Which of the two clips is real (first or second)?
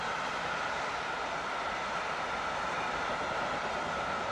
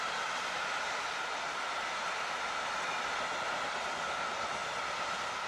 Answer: second